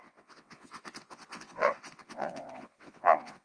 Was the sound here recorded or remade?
remade